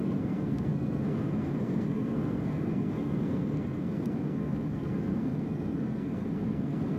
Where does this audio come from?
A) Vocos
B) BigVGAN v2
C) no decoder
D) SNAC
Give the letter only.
D